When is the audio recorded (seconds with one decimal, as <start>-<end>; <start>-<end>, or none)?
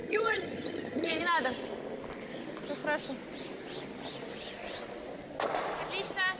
1.2-6.4